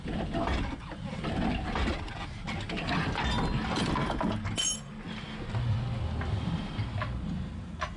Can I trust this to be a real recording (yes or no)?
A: yes